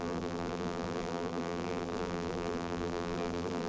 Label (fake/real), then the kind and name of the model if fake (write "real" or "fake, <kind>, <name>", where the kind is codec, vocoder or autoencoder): fake, vocoder, BigVGAN v2